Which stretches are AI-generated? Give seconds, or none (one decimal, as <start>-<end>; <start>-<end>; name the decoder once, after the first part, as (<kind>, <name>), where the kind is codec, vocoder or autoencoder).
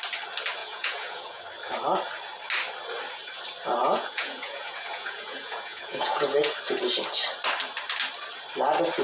0.6-1.4 (vocoder, Vocos); 3.8-6.5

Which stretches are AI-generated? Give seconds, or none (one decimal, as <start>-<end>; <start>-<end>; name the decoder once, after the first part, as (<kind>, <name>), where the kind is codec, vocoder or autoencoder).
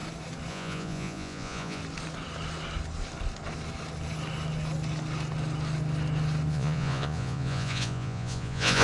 0.5-1.8 (vocoder, Vocos); 6.5-8.8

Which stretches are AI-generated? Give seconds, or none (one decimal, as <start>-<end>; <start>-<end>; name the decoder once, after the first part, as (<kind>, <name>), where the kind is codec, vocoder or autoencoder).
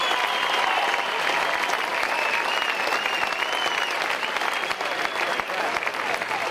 none